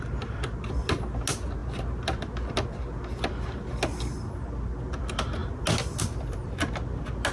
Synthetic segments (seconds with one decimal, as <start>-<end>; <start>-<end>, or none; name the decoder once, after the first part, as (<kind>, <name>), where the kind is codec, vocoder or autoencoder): none